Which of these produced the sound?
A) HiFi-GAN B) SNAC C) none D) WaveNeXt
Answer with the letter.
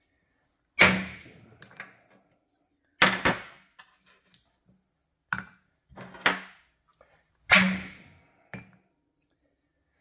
C